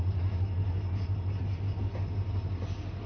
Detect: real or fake real